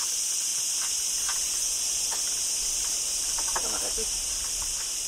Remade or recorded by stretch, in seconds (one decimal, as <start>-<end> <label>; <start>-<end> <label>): 0.0-5.1 recorded